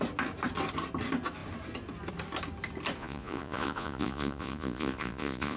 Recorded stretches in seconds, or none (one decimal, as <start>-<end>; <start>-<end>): 0.0-3.0